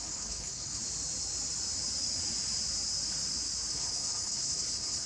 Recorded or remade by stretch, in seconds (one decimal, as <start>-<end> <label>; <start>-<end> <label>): 0.0-0.8 remade; 0.8-3.7 recorded; 3.7-5.1 remade

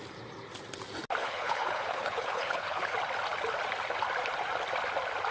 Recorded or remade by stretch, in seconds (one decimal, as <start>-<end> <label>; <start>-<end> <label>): 0.0-1.2 recorded; 1.2-2.9 remade; 2.9-5.3 recorded

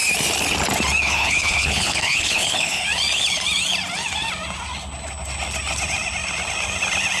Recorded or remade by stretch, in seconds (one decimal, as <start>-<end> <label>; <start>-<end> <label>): 0.0-1.0 recorded; 1.0-2.8 remade; 2.8-7.2 recorded